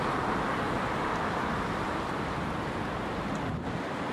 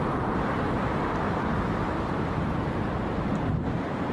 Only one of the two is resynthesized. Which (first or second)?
second